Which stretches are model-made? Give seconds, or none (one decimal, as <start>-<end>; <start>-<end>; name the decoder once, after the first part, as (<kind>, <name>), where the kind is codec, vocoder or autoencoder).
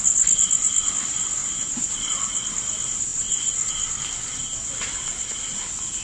none